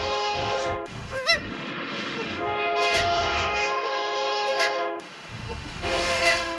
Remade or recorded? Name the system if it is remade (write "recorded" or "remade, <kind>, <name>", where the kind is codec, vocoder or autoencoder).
remade, autoencoder, DAC-VAE